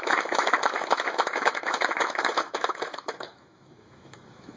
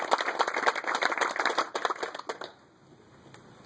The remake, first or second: first